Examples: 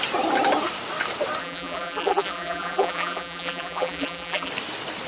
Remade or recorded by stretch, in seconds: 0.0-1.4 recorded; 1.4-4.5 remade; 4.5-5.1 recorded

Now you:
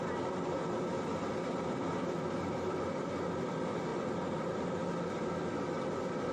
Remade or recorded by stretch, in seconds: 0.0-6.3 recorded

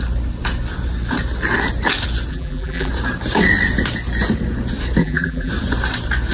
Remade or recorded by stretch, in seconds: 0.0-2.3 recorded; 2.3-2.9 remade; 2.9-5.0 recorded; 5.0-5.5 remade; 5.5-6.3 recorded

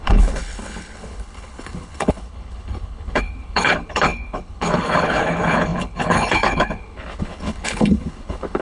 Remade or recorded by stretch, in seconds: 0.0-8.6 remade

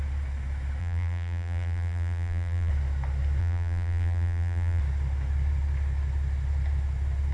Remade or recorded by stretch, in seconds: 0.0-0.8 recorded; 0.8-2.7 remade; 2.7-3.4 recorded; 3.4-4.8 remade; 4.8-7.3 recorded